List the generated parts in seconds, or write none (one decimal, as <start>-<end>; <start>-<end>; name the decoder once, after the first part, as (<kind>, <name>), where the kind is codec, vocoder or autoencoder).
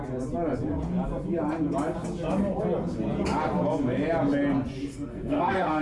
4.9-5.8 (codec, SNAC)